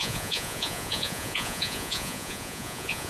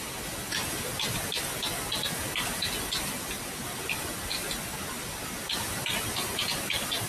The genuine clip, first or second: second